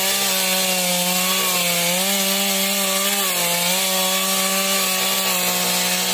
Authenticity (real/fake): real